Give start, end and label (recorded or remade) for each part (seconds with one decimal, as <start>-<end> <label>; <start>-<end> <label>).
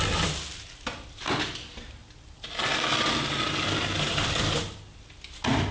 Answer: 0.0-5.7 recorded